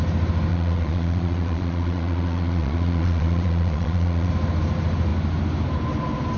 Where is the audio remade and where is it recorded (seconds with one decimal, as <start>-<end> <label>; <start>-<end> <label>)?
0.0-0.5 recorded; 0.5-4.3 remade; 4.3-6.4 recorded